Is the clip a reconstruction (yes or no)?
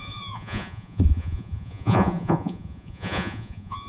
yes